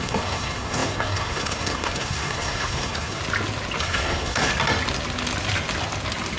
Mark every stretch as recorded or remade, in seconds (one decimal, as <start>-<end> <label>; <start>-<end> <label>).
0.0-3.2 remade; 3.2-3.8 recorded; 3.8-4.5 remade; 4.5-6.4 recorded